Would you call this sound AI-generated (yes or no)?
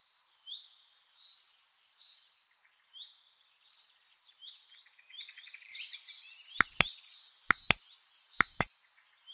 yes